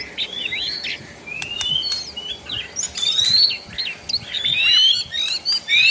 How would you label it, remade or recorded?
recorded